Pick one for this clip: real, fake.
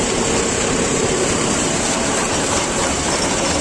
real